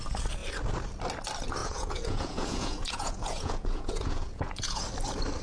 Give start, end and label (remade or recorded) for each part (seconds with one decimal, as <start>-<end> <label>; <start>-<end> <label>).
0.0-1.6 recorded; 1.6-4.8 remade; 4.8-5.4 recorded